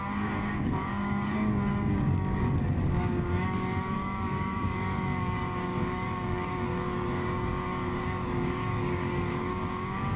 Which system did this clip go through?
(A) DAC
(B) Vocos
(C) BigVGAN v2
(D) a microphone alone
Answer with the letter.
A